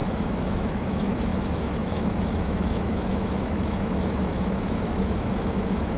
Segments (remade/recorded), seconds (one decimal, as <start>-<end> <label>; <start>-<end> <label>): 0.0-6.0 remade